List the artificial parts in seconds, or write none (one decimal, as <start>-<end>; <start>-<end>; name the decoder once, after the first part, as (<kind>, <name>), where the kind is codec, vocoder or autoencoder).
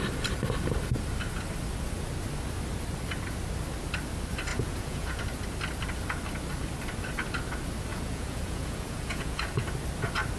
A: 4.5-5.2 (vocoder, Vocos); 7.9-9.4